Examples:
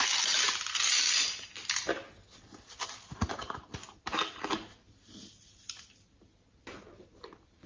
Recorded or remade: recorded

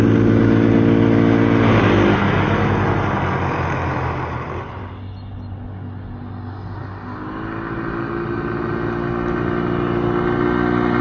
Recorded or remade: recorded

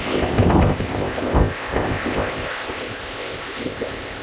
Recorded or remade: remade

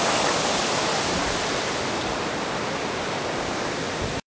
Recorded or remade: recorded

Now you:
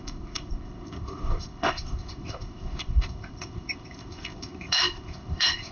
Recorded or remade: remade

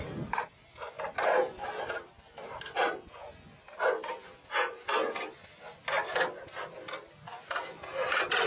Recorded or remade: recorded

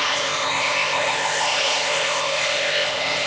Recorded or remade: remade